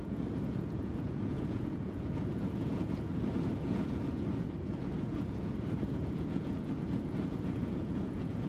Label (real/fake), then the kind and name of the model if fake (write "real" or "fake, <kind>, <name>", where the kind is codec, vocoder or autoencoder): fake, vocoder, Vocos